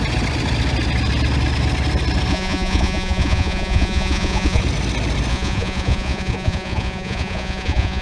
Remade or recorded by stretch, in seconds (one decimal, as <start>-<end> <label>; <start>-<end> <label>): 0.0-2.3 recorded; 2.3-4.6 remade; 4.6-5.3 recorded; 5.3-8.0 remade